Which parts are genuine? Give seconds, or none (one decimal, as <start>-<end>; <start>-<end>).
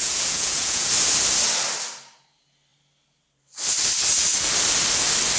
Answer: 0.9-5.4